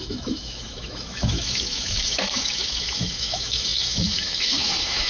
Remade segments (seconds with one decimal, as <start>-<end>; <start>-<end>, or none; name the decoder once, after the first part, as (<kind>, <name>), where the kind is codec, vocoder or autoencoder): 0.0-5.1 (autoencoder, DAC-VAE)